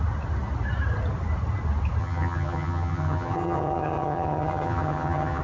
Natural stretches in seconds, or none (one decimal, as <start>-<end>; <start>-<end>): 0.0-2.0

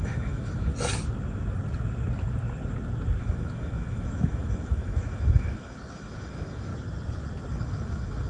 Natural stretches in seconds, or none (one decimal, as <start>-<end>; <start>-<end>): 0.7-3.2; 6.7-7.5

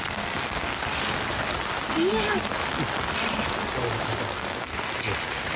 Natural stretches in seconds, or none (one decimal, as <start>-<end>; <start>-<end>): 0.8-4.2; 4.7-5.6

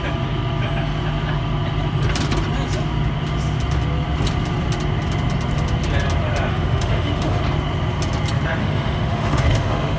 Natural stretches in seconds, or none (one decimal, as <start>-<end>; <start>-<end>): 0.0-6.5; 7.4-8.6

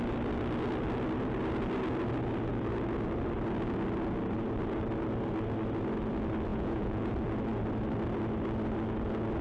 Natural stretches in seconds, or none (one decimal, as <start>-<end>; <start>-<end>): 0.0-6.5; 7.1-9.4

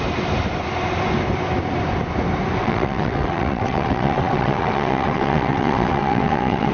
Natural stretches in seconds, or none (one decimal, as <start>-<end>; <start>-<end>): 0.0-2.6

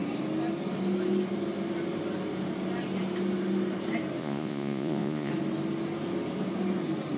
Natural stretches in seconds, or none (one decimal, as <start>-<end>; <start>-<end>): 0.0-4.2; 5.3-7.2

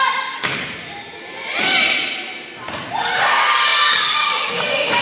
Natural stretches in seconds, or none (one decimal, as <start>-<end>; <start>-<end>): 0.5-3.2